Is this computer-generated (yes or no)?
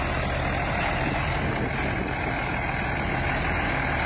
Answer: no